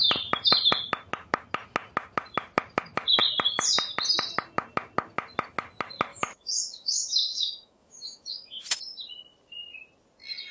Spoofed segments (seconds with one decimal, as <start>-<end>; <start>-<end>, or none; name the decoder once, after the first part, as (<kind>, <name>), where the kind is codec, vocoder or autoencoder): 6.1-8.6 (autoencoder, DAC-VAE)